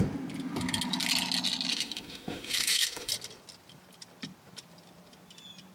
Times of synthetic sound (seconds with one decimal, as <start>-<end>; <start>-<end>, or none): 1.7-3.1